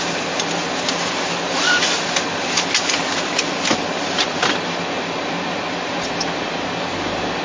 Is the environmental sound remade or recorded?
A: recorded